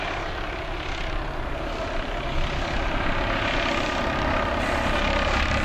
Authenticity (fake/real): real